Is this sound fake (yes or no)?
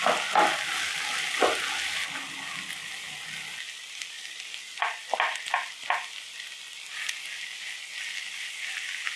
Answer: no